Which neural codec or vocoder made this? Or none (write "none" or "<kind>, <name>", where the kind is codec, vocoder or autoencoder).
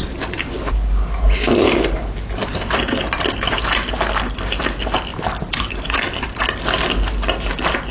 none